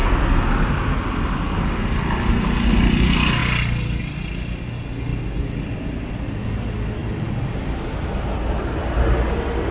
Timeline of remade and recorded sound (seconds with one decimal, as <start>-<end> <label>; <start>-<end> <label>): 0.0-9.7 recorded